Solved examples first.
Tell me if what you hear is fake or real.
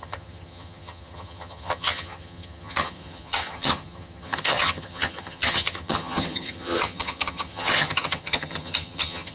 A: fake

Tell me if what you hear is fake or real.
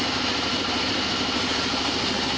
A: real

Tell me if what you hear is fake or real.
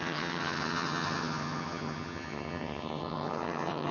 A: fake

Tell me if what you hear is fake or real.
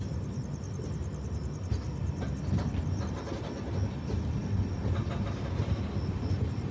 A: real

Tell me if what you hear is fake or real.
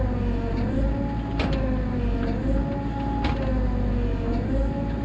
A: real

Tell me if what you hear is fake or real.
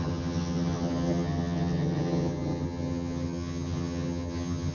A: fake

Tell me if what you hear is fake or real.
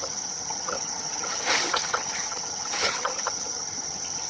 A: fake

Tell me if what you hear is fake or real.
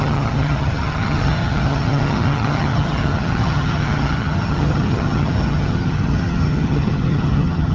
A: fake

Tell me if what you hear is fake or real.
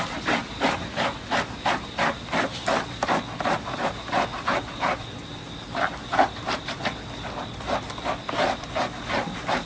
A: real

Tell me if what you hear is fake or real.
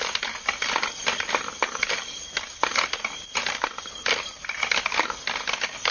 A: real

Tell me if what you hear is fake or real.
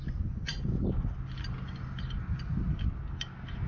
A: real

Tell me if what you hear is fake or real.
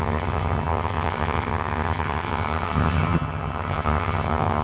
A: fake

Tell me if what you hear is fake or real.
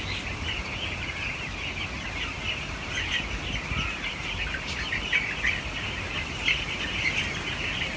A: real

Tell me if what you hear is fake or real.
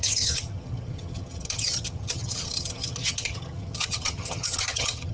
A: fake